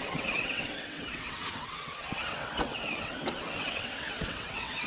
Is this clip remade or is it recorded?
remade